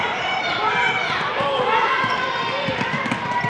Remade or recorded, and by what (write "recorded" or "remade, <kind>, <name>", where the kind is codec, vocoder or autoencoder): recorded